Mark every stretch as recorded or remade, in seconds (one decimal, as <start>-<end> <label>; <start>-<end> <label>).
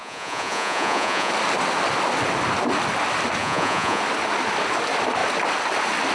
0.0-1.3 remade; 1.3-3.4 recorded; 3.4-4.0 remade; 4.0-6.1 recorded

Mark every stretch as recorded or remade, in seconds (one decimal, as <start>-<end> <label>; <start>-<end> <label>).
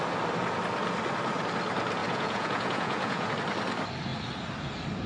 0.0-2.0 recorded; 2.0-3.3 remade; 3.3-5.1 recorded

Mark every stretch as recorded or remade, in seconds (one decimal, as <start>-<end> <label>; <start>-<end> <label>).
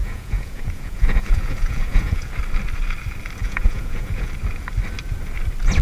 0.0-2.3 remade; 2.3-3.4 recorded; 3.4-4.3 remade; 4.3-5.8 recorded